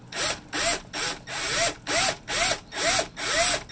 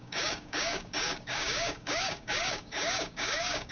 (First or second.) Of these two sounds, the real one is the first